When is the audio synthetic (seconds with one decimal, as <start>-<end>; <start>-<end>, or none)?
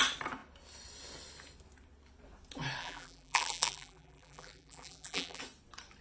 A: 2.8-5.4